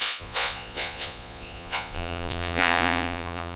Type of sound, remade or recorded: remade